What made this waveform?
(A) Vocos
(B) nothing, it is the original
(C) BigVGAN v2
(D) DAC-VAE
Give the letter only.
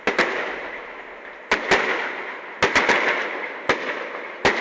B